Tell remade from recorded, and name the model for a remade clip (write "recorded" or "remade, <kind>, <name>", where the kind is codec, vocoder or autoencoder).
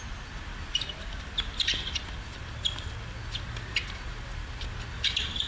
recorded